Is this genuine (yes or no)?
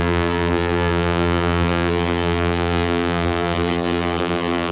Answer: no